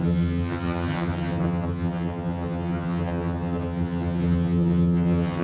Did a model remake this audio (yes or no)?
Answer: yes